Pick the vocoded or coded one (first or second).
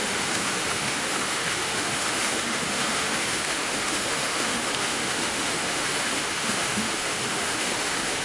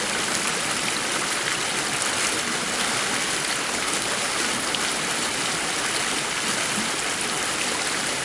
first